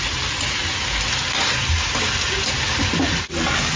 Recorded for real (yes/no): yes